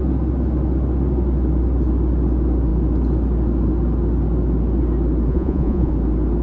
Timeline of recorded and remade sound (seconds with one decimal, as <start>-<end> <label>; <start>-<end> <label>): 0.0-5.3 recorded; 5.3-5.9 remade; 5.9-6.4 recorded